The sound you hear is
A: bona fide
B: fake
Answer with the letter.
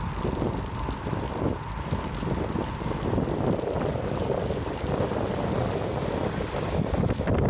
A